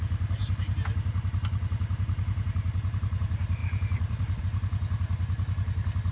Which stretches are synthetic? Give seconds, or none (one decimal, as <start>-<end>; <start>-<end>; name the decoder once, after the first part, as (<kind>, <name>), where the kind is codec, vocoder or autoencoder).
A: 3.6-4.4 (vocoder, BigVGAN v2)